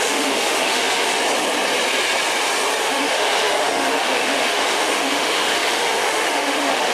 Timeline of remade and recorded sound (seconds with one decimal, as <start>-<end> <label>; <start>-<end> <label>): 0.0-1.2 remade; 1.2-2.8 recorded; 2.8-6.9 remade